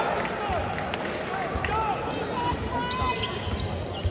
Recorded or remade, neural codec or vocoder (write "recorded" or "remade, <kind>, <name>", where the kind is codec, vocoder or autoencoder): recorded